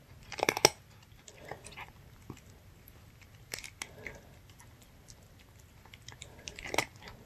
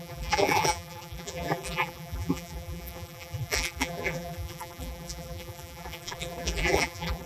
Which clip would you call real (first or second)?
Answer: first